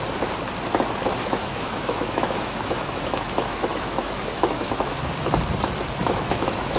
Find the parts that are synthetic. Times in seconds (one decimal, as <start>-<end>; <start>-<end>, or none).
1.2-4.9; 6.0-6.8